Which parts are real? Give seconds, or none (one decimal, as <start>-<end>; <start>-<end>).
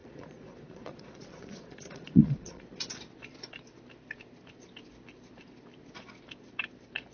2.6-7.1